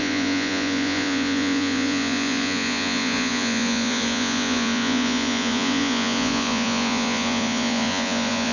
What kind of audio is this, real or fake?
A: fake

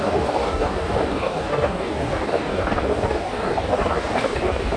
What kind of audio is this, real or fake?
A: fake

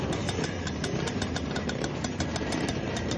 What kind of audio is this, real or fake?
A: fake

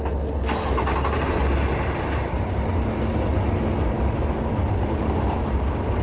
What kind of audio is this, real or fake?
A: real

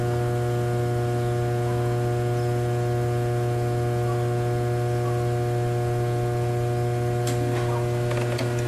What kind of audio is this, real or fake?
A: real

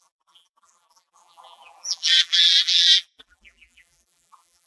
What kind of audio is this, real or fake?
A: fake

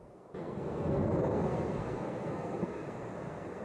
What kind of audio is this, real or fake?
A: fake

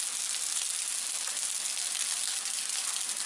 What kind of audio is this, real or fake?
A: real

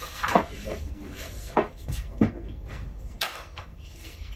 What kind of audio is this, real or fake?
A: fake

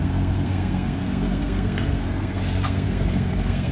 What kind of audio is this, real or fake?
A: fake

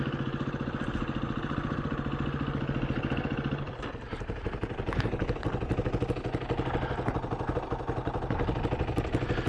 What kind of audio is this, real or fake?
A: real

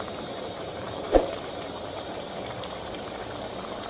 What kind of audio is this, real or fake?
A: fake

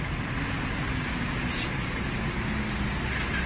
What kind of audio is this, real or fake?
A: real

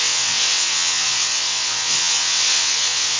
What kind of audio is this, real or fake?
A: fake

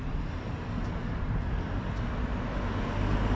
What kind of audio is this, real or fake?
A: real